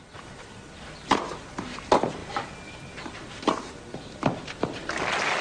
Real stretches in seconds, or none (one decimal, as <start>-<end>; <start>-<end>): 0.0-5.4